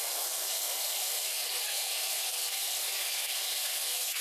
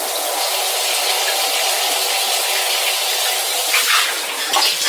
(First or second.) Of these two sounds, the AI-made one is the first